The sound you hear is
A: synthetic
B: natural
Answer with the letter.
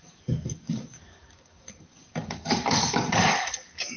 A